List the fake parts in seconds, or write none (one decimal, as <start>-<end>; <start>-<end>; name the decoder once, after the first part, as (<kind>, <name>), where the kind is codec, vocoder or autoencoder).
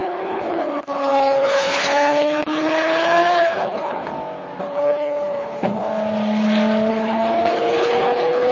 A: 0.0-4.1 (codec, HILCodec); 4.6-5.9; 6.9-8.5